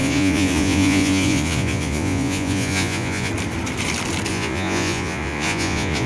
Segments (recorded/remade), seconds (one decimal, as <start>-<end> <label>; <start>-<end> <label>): 0.0-3.3 remade; 3.3-4.3 recorded; 4.3-6.1 remade

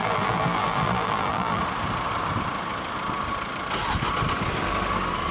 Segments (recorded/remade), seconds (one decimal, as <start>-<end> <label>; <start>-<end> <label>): 0.0-1.6 remade; 1.6-5.3 recorded

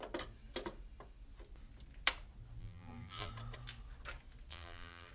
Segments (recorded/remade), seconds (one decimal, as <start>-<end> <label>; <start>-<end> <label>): 0.0-2.6 recorded; 2.6-3.3 remade; 3.3-4.5 recorded; 4.5-5.1 remade

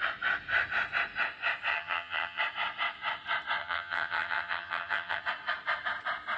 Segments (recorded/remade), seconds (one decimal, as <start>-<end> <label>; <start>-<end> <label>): 0.0-1.7 recorded; 1.7-2.4 remade; 2.4-3.6 recorded; 3.6-5.2 remade; 5.2-6.4 recorded